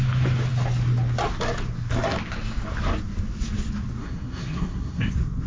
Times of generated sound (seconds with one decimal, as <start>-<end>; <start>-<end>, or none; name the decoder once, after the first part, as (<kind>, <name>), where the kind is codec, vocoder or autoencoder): 4.0-5.1 (codec, SNAC)